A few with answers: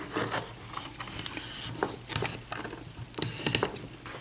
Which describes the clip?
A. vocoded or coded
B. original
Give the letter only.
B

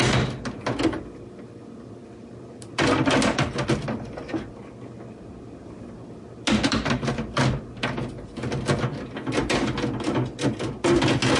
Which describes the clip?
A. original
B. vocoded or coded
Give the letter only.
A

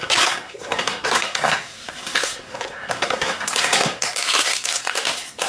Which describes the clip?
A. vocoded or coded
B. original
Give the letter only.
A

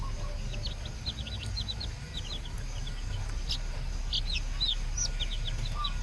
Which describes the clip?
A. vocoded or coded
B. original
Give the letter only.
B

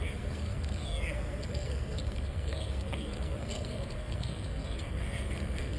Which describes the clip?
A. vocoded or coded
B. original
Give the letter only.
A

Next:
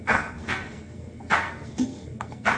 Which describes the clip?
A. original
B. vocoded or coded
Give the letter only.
B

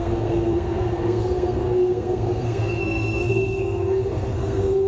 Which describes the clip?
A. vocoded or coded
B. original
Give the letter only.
A